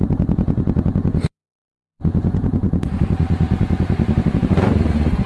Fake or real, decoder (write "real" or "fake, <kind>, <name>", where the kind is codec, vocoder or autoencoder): fake, vocoder, Vocos